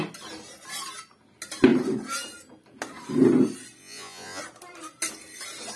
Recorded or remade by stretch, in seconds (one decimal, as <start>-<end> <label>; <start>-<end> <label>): 0.0-3.8 recorded; 3.8-4.4 remade; 4.4-5.8 recorded